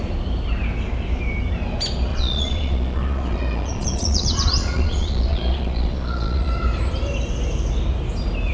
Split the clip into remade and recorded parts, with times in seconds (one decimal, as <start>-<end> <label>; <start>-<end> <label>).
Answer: 0.0-2.1 recorded; 2.1-6.5 remade; 6.5-8.5 recorded